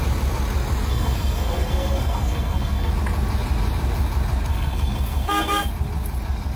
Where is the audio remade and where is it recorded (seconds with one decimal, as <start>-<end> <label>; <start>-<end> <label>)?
0.0-0.9 recorded; 0.9-2.9 remade; 2.9-4.5 recorded; 4.5-5.7 remade; 5.7-6.6 recorded